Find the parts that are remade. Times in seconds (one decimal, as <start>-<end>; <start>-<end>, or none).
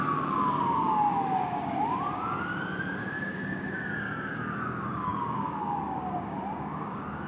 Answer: 0.0-2.5; 3.0-7.3